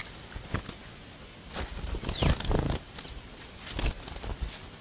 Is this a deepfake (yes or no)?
no